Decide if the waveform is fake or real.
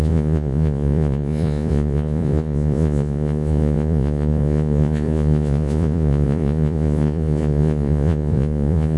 fake